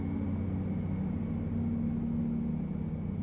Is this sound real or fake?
real